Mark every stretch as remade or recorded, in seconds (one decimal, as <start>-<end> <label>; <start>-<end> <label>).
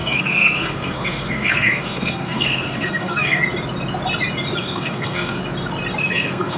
0.0-3.4 remade; 3.4-4.6 recorded; 4.6-5.4 remade; 5.4-6.0 recorded; 6.0-6.6 remade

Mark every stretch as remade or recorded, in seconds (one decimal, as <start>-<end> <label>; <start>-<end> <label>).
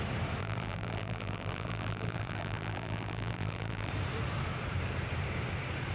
0.0-0.4 recorded; 0.4-3.9 remade; 3.9-5.9 recorded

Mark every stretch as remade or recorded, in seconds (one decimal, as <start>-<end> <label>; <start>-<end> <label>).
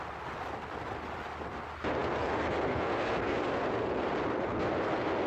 0.0-5.3 recorded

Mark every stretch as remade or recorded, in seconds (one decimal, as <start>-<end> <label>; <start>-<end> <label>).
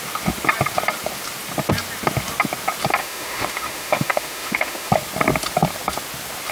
0.0-3.0 recorded; 3.0-4.9 remade; 4.9-6.5 recorded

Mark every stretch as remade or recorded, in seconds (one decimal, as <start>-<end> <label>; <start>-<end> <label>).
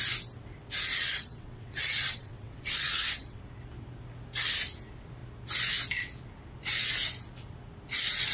0.0-0.9 recorded; 0.9-3.4 remade; 3.4-8.3 recorded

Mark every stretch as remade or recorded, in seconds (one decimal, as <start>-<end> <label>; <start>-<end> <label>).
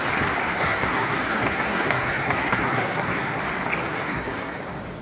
0.0-0.4 recorded; 0.4-3.4 remade; 3.4-3.9 recorded; 3.9-4.6 remade; 4.6-5.0 recorded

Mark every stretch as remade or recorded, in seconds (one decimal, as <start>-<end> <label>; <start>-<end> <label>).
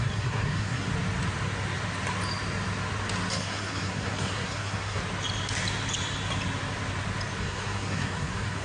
0.0-0.9 remade; 0.9-3.3 recorded; 3.3-5.0 remade; 5.0-7.4 recorded; 7.4-8.6 remade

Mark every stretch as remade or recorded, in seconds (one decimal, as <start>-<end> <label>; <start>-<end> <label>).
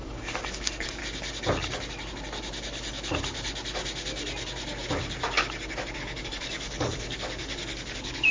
0.0-1.0 remade; 1.0-6.0 recorded; 6.0-8.3 remade